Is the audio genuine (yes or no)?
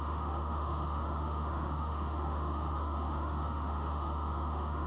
no